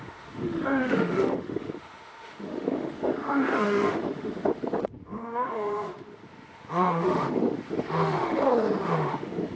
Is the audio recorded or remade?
remade